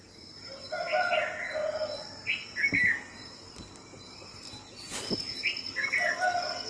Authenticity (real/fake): real